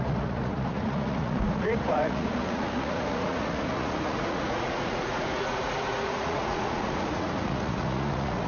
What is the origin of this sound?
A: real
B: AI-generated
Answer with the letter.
B